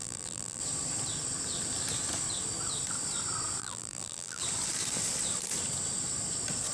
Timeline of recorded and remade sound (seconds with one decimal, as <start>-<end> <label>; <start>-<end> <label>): 0.0-0.6 remade; 0.6-3.6 recorded; 3.6-4.4 remade; 4.4-6.7 recorded